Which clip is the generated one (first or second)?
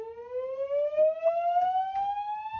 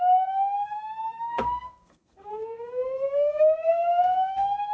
second